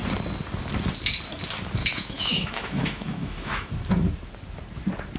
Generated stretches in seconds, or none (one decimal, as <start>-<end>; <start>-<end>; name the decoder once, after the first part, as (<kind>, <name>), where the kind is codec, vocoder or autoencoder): 1.8-3.7 (autoencoder, DAC-VAE)